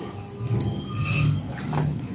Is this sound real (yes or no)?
yes